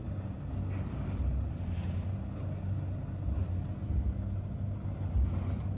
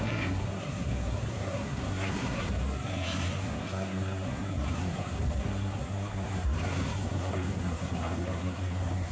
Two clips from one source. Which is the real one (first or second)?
first